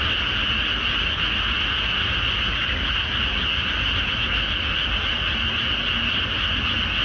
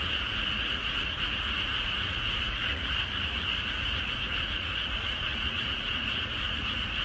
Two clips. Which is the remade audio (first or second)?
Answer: second